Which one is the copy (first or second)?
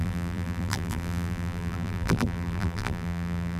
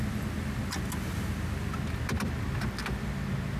first